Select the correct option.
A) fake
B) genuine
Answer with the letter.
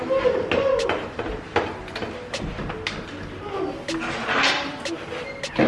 B